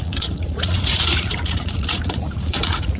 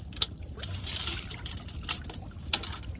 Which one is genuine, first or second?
second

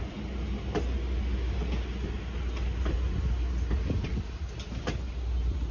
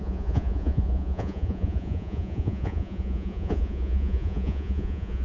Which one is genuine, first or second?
first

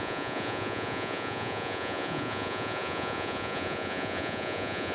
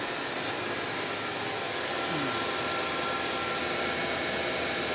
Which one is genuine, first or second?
second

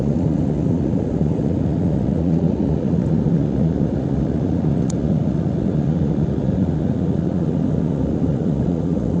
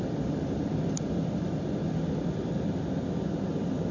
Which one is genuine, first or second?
second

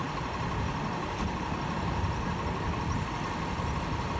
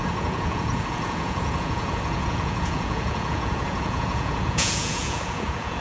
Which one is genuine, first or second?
first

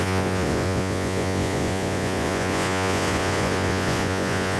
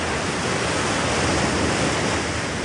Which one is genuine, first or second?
second